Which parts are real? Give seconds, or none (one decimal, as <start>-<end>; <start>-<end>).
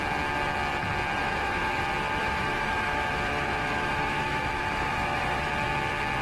0.0-1.2; 1.8-2.2; 5.5-6.2